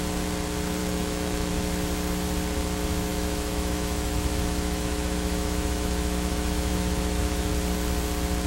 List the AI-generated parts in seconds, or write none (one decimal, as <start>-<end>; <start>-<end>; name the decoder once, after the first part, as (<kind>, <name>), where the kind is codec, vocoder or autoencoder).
0.8-1.5 (autoencoder, DAC-VAE); 3.1-7.5